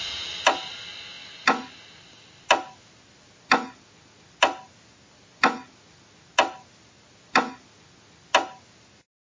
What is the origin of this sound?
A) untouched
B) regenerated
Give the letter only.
A